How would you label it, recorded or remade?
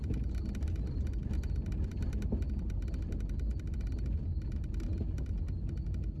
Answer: recorded